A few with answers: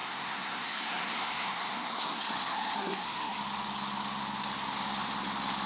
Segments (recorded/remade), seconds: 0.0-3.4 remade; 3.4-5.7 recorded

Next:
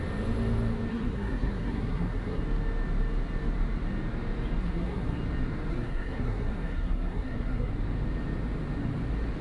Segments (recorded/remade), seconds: 0.0-0.9 recorded; 0.9-2.4 remade; 2.4-4.6 recorded; 4.6-5.2 remade; 5.2-5.7 recorded; 5.7-7.7 remade; 7.7-9.4 recorded

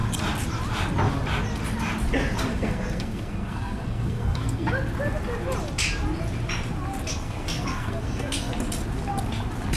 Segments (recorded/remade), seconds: 0.0-2.5 recorded; 2.5-4.7 remade; 4.7-7.1 recorded; 7.1-8.5 remade; 8.5-9.8 recorded

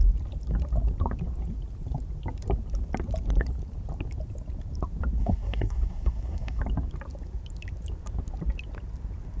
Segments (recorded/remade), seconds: 0.0-5.2 recorded; 5.2-6.6 remade; 6.6-9.4 recorded

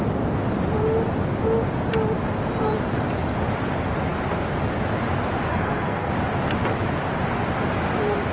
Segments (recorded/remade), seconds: 0.0-5.5 recorded; 5.5-6.1 remade; 6.1-8.3 recorded

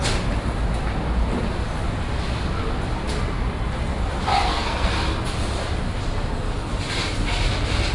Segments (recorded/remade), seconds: 0.0-4.3 recorded; 4.3-4.9 remade; 4.9-7.9 recorded